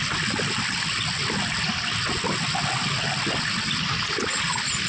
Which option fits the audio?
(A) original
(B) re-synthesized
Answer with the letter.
A